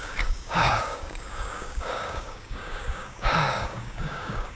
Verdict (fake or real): fake